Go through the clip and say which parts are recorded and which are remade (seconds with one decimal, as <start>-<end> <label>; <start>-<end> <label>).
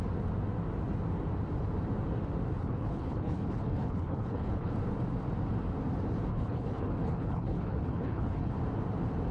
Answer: 0.0-2.6 recorded; 2.6-4.7 remade; 4.7-6.3 recorded; 6.3-8.5 remade; 8.5-9.3 recorded